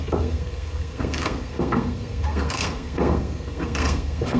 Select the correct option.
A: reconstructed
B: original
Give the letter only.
A